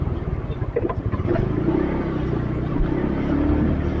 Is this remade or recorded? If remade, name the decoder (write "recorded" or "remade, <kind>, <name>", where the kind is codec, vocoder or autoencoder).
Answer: recorded